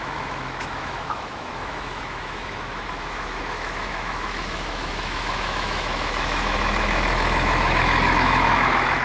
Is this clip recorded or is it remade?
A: remade